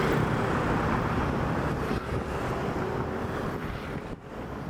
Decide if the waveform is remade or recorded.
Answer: recorded